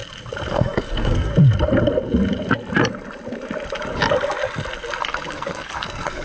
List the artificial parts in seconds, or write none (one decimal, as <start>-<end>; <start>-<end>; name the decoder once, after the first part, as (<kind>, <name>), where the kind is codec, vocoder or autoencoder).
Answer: 0.5-1.3 (codec, SNAC); 5.0-6.2